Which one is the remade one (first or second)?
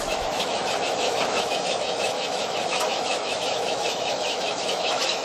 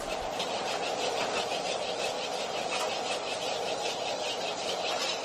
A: first